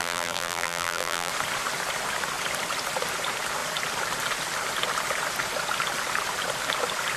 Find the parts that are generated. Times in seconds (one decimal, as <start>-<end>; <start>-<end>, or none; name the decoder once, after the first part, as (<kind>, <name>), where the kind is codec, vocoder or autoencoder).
0.0-1.3 (vocoder, BigVGAN v2)